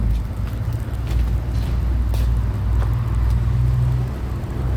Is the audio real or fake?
real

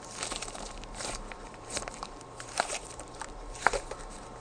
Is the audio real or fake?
fake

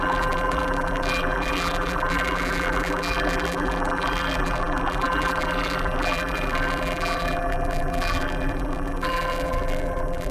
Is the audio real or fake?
fake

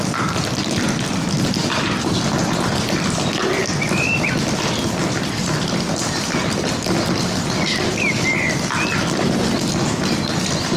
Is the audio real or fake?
real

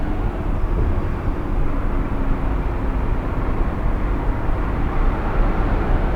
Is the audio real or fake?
real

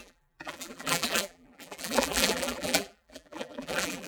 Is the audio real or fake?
fake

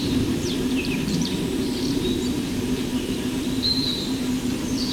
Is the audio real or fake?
fake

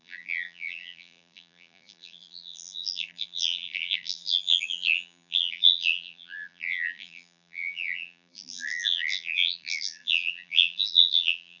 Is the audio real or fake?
fake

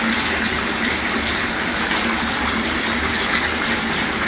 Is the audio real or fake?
fake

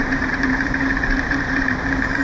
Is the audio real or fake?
fake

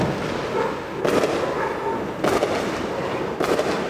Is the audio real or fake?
real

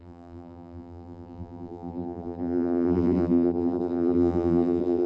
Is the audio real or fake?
fake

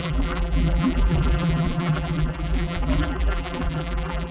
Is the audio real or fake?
fake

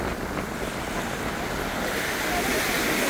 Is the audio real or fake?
real